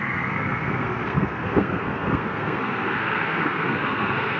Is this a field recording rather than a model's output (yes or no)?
no